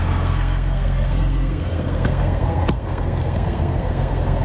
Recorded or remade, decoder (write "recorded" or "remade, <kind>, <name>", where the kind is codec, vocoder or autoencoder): remade, codec, SNAC